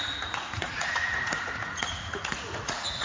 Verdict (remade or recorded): remade